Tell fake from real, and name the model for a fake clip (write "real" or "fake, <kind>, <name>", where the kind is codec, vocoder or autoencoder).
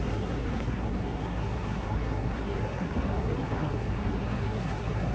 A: fake, codec, SNAC